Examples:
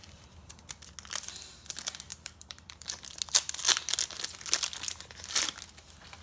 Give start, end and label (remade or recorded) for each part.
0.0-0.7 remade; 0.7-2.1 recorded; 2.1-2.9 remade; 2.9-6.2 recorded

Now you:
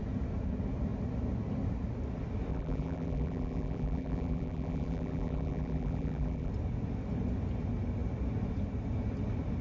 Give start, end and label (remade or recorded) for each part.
0.0-2.5 recorded; 2.5-6.5 remade; 6.5-9.6 recorded